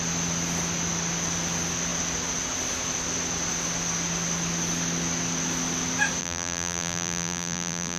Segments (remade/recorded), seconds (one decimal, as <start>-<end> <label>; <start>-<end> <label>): 0.0-6.2 recorded; 6.2-8.0 remade